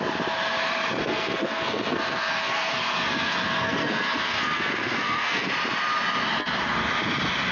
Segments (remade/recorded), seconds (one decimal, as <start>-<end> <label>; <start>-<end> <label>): 0.0-1.0 recorded; 1.0-5.5 remade; 5.5-7.5 recorded